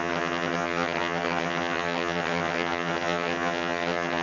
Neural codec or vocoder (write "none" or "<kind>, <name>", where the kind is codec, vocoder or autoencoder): vocoder, HiFi-GAN